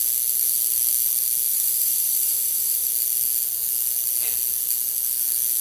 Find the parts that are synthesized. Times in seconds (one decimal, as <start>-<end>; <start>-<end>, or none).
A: 1.5-2.9

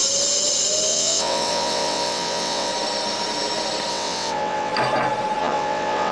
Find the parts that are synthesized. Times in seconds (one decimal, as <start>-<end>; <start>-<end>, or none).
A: 0.9-2.7; 3.9-4.7; 5.4-6.1

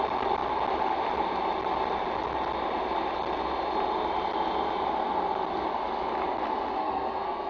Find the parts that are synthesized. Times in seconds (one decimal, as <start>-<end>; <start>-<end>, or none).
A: 6.8-7.5

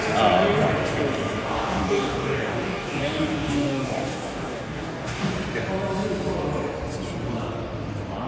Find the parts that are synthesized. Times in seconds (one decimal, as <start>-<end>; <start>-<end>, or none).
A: 1.4-5.3

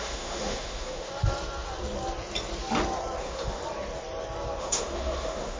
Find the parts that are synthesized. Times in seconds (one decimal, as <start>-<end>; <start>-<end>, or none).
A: 0.0-1.1; 3.2-3.6; 4.6-5.6

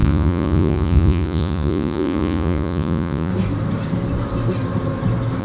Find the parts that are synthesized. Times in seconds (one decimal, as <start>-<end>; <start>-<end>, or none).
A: 0.0-3.3

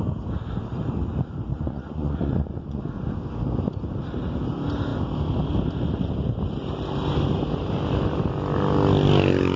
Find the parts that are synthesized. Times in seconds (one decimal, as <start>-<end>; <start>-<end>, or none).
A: 1.5-2.8

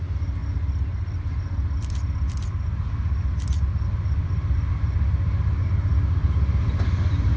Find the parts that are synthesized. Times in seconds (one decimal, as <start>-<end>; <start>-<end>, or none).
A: none